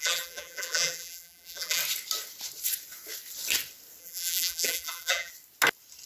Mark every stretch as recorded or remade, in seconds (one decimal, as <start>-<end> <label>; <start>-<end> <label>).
0.0-1.8 remade; 1.8-4.0 recorded; 4.0-5.3 remade; 5.3-6.1 recorded